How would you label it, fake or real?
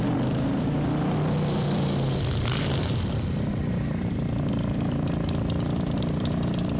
fake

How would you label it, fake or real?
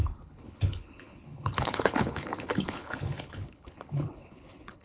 fake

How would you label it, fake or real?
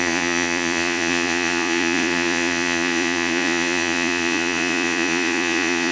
fake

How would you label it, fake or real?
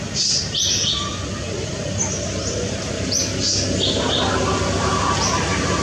real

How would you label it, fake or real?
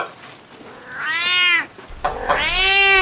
real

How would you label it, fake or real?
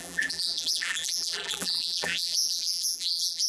fake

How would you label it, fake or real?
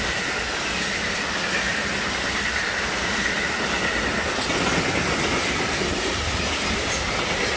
real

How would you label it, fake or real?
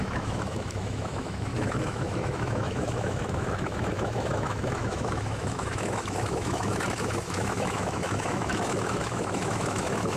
fake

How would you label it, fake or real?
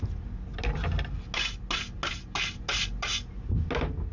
real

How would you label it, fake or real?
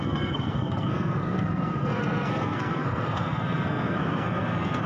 fake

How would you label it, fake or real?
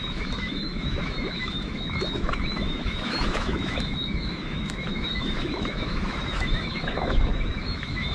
fake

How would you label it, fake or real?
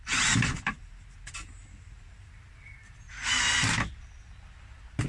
real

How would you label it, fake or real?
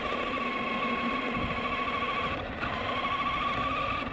real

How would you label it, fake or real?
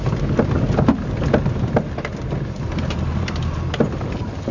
real